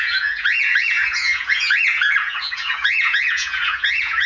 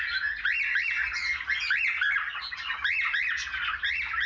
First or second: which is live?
second